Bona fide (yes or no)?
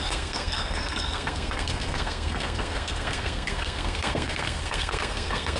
no